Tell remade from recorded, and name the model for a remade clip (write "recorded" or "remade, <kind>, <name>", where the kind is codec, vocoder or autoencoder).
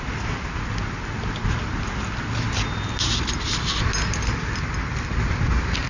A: recorded